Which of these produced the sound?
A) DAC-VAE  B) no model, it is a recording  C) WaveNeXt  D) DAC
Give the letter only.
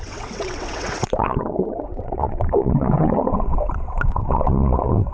C